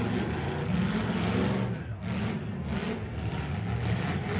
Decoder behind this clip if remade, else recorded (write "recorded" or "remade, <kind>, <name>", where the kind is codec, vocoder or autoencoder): recorded